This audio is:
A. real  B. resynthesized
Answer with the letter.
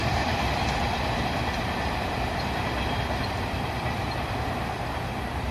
B